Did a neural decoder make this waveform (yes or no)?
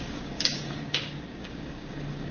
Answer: yes